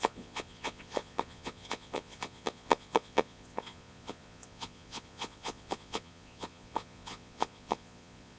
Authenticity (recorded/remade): remade